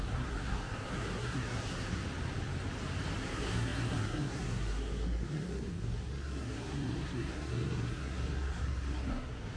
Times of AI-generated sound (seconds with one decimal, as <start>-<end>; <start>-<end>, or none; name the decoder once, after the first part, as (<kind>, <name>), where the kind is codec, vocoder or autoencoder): 0.0-2.0 (codec, SNAC); 3.2-9.6